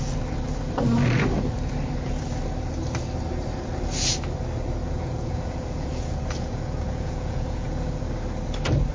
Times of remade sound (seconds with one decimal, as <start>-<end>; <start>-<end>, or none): 4.8-8.0